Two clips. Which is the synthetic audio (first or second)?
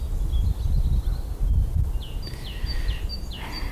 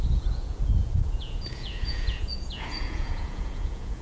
second